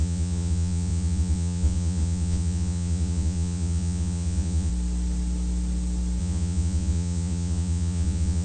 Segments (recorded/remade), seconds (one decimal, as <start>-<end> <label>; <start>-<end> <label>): 0.0-4.7 remade; 4.7-6.2 recorded; 6.2-8.4 remade